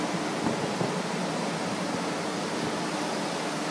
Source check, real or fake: real